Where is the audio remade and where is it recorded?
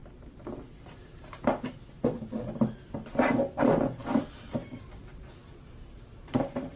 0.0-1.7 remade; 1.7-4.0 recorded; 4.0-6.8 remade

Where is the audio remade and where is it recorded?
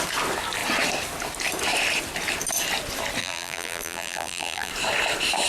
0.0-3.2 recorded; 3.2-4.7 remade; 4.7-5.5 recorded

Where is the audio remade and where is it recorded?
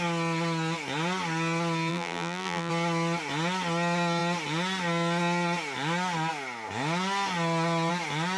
0.0-1.9 recorded; 1.9-2.7 remade; 2.7-8.4 recorded